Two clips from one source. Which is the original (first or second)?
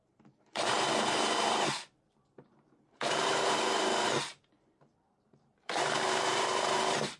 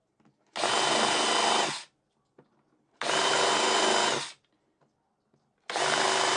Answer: second